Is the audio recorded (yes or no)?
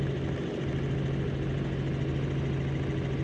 yes